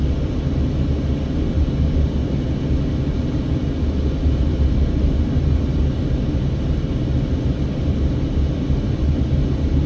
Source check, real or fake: real